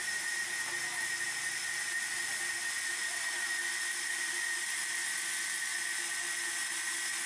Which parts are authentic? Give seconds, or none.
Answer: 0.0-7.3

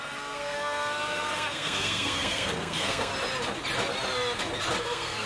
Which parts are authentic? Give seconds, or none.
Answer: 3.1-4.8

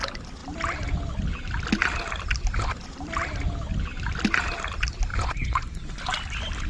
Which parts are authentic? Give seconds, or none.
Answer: 0.0-5.1; 5.8-6.7

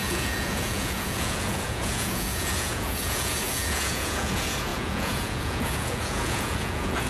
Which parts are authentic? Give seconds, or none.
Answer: none